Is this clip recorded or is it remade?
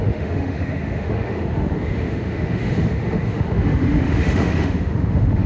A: remade